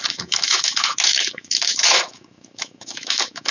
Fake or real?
fake